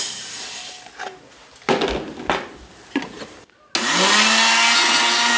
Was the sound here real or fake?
real